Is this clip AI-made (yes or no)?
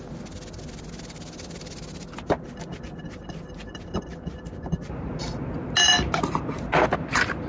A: no